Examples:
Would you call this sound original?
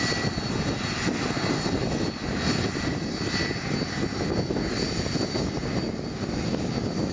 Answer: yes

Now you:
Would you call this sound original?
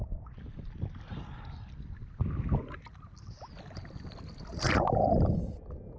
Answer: yes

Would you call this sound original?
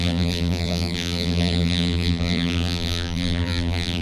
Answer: no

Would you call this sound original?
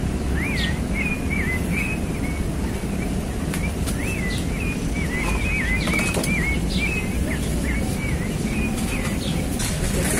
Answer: yes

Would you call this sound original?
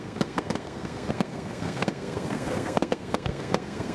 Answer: no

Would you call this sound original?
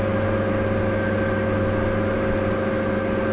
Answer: yes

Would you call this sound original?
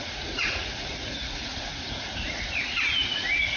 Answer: no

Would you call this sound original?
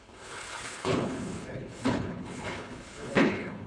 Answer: no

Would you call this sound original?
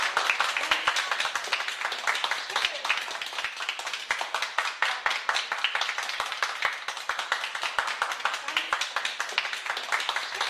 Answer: yes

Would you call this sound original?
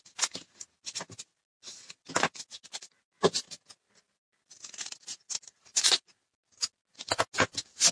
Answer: yes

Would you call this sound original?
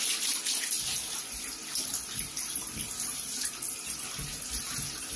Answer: yes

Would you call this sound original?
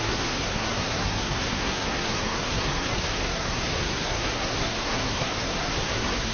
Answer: no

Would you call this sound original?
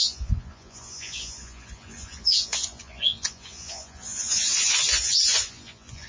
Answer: no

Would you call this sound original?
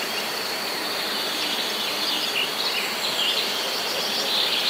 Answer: yes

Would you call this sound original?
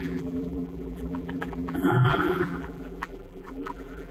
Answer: no